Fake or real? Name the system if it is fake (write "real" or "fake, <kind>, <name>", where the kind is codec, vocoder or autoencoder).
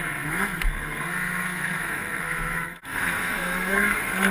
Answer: fake, codec, SNAC